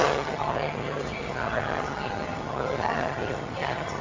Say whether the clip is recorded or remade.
remade